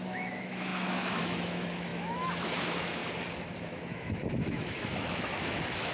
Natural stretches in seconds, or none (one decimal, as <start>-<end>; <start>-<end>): 3.0-3.7